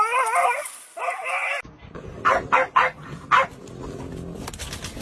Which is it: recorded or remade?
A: recorded